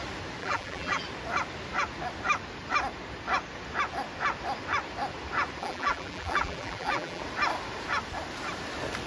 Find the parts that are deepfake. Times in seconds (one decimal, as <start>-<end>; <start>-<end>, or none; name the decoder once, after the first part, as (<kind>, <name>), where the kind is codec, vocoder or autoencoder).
0.4-1.0 (vocoder, BigVGAN v2); 5.6-7.2